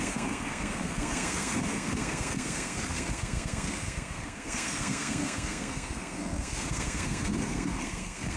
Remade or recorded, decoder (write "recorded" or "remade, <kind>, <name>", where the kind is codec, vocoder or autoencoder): remade, codec, SNAC